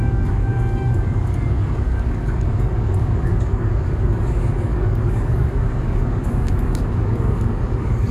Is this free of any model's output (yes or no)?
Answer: no